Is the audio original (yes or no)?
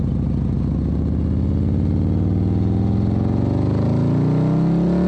yes